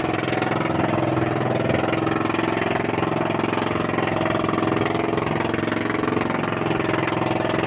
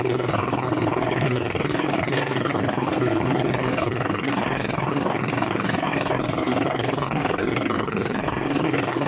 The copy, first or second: second